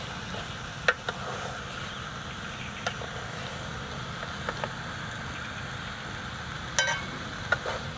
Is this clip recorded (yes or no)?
yes